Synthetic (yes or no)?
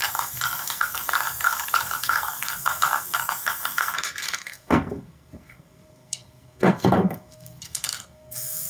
yes